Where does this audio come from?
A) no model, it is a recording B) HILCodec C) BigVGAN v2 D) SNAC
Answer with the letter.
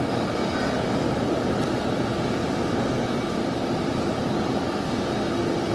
A